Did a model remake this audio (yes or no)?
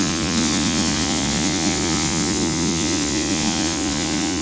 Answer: yes